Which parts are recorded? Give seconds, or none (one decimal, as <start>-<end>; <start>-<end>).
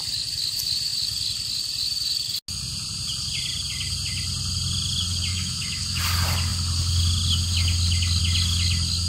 0.0-5.3; 6.0-9.1